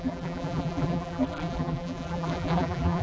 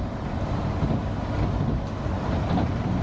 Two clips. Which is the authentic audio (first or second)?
second